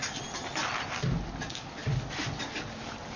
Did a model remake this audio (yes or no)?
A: no